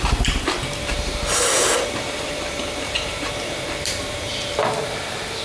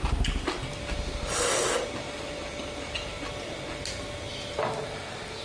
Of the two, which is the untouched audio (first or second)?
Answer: second